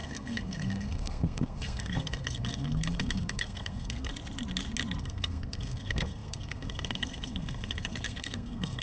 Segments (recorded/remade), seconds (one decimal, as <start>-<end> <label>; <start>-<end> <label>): 0.0-4.1 remade; 4.1-5.0 recorded; 5.0-8.8 remade